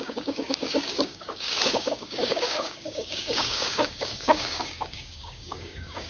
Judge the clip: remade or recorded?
remade